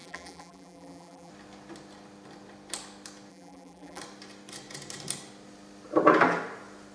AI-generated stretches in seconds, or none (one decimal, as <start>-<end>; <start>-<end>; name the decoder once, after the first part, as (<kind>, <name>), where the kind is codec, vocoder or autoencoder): 0.0-1.3 (vocoder, BigVGAN v2); 3.3-4.0